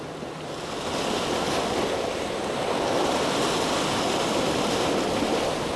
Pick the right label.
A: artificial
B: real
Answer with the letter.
B